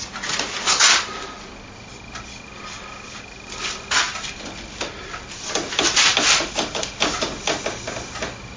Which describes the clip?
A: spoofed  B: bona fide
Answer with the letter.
B